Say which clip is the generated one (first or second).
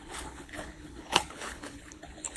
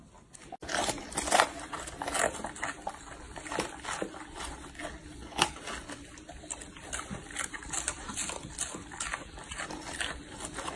first